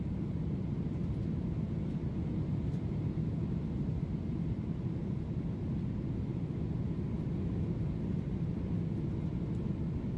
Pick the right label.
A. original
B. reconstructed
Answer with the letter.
A